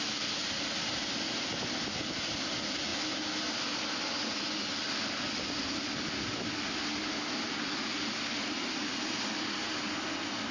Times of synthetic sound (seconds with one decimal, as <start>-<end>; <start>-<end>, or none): none